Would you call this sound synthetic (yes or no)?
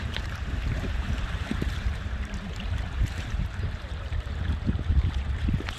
yes